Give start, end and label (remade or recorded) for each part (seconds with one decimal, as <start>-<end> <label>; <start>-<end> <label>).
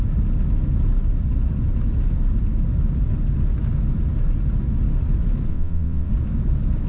0.0-5.5 recorded; 5.5-6.1 remade; 6.1-6.9 recorded